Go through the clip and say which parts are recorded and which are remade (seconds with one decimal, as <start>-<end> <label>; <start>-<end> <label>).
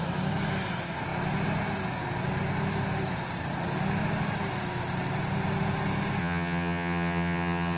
0.0-6.2 recorded; 6.2-7.8 remade